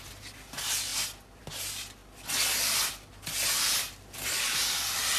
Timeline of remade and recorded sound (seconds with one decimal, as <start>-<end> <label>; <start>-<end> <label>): 0.0-5.2 recorded